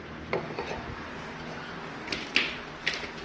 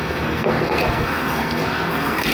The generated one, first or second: second